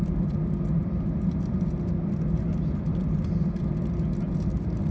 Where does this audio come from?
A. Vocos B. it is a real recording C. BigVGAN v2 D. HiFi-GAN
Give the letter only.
B